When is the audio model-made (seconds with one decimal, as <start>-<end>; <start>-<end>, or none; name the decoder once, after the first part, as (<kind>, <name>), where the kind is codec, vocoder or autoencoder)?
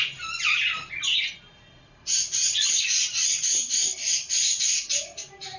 none